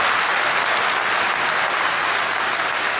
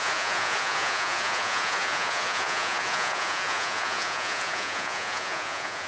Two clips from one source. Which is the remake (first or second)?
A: second